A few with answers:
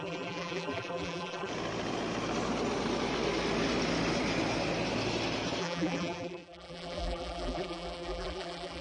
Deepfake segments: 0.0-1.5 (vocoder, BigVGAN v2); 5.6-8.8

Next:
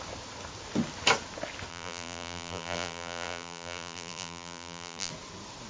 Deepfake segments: 1.7-5.1 (vocoder, BigVGAN v2)

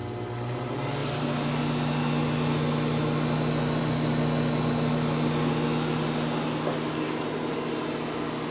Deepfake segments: none

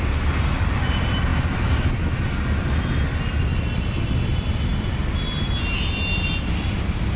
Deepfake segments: none

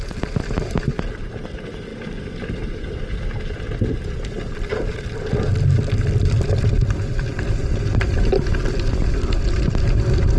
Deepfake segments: 1.9-2.5 (vocoder, BigVGAN v2); 7.3-7.8

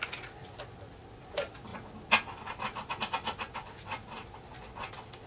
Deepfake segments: none

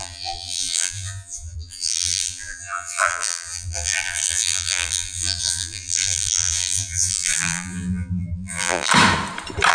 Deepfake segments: 0.0-8.9 (vocoder, BigVGAN v2)

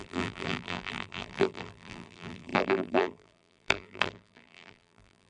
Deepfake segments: 0.0-5.3 (vocoder, BigVGAN v2)